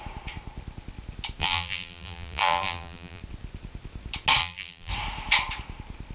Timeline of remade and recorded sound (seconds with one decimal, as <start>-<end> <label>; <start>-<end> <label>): 0.0-1.4 recorded; 1.4-3.2 remade; 3.2-4.4 recorded; 4.4-4.9 remade; 4.9-6.1 recorded